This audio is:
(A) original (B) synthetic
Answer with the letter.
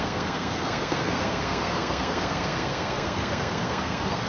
B